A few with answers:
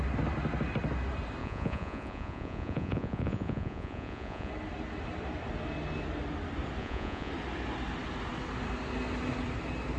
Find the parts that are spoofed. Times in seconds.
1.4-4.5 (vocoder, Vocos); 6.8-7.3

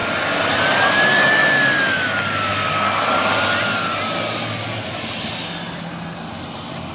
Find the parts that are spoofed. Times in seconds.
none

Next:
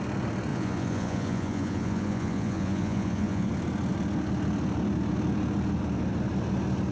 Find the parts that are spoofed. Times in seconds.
0.5-3.5 (vocoder, Vocos)